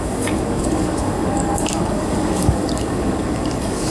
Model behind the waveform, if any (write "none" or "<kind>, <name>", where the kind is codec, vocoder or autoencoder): codec, DAC